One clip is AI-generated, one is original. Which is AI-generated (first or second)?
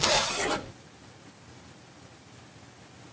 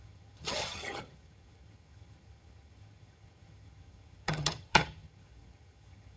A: second